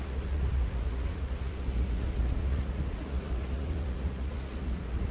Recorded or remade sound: remade